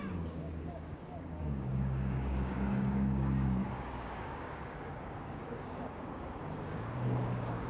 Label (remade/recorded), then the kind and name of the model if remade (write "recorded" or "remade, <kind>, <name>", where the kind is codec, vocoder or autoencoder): remade, codec, DAC